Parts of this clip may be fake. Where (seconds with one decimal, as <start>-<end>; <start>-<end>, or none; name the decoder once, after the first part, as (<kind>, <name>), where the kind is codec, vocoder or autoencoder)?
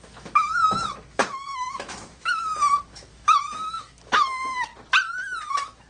0.0-4.7 (autoencoder, DAC-VAE); 5.5-5.9